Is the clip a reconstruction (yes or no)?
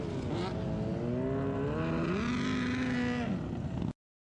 no